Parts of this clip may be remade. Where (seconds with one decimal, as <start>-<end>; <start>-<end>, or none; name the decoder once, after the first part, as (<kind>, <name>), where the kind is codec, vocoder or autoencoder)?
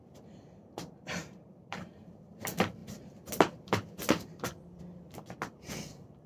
1.2-2.4 (vocoder, BigVGAN v2)